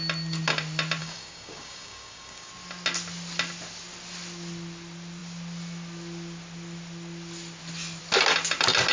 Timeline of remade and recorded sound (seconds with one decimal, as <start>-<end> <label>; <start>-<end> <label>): 0.0-1.0 recorded; 1.0-2.5 remade; 2.5-8.9 recorded